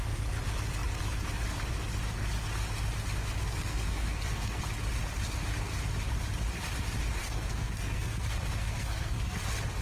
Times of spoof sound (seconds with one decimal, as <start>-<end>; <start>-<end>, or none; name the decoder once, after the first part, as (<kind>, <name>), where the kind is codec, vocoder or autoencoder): 3.4-4.6 (codec, SNAC); 7.2-9.4